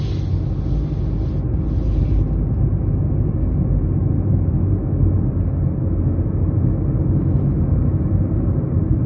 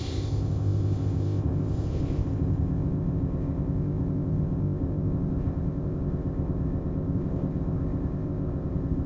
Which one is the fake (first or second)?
second